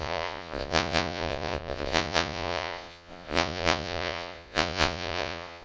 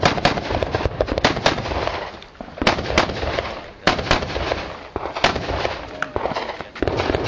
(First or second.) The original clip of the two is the second